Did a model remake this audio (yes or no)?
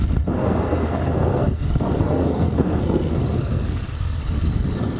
yes